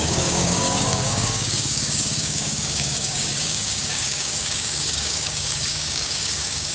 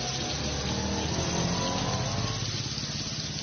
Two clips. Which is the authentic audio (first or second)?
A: second